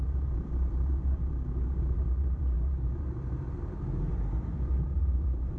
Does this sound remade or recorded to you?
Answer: remade